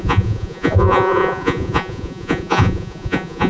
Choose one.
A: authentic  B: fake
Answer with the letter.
B